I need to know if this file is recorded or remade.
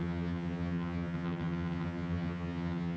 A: remade